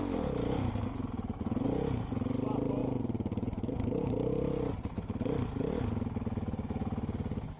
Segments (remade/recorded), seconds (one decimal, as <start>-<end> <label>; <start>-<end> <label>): 0.0-2.8 recorded; 2.8-4.5 remade; 4.5-7.6 recorded